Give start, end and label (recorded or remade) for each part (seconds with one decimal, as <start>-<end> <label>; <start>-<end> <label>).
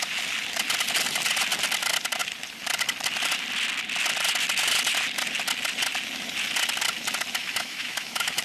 0.0-7.4 recorded; 7.4-8.4 remade